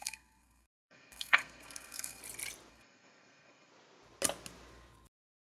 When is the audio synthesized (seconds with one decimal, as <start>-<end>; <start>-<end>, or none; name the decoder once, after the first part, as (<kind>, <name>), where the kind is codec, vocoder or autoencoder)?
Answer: 0.0-2.2 (codec, SNAC); 2.7-3.7